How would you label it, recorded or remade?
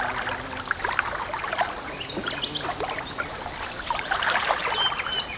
recorded